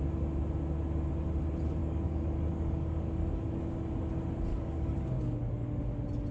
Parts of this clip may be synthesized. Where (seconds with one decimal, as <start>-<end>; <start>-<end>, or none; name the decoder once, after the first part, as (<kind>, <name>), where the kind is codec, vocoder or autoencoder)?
1.8-3.6 (codec, DAC); 4.5-5.8